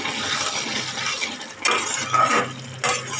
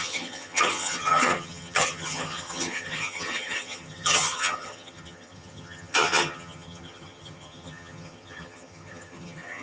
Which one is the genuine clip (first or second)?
first